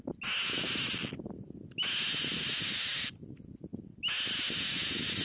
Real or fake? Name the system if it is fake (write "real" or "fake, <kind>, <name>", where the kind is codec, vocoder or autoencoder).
real